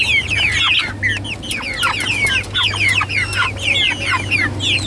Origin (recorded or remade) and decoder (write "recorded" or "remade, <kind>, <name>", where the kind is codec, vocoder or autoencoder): recorded